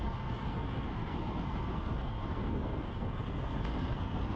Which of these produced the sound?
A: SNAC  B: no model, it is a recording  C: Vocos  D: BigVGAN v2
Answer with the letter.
A